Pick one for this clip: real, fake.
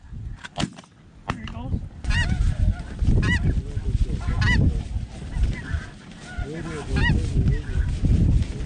real